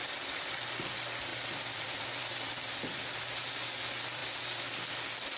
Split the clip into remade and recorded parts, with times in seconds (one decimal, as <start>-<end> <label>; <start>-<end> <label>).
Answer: 0.0-1.3 recorded; 1.3-3.2 remade; 3.2-4.2 recorded; 4.2-4.9 remade; 4.9-5.4 recorded

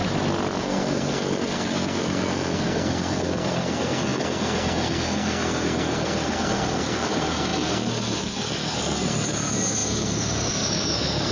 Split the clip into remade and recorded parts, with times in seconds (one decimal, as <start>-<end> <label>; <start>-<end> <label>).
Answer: 0.0-0.6 recorded; 0.6-11.3 remade

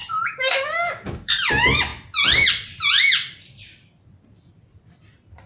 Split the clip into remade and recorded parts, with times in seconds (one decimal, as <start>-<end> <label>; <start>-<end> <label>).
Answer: 0.0-1.3 remade; 1.3-5.5 recorded

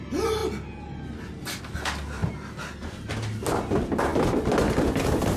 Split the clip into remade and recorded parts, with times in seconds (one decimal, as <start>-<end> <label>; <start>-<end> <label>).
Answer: 0.0-5.4 recorded